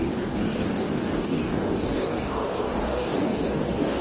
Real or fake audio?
fake